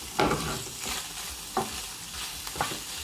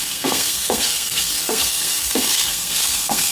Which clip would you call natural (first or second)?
first